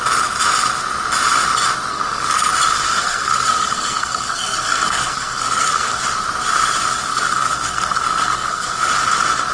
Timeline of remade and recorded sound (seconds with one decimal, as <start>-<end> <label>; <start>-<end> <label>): 0.0-1.9 recorded; 1.9-2.5 remade; 2.5-3.0 recorded; 3.0-6.0 remade; 6.0-7.1 recorded; 7.1-8.9 remade; 8.9-9.5 recorded